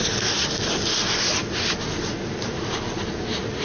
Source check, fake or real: real